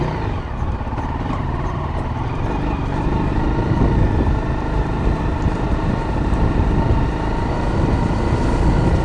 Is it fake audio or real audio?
real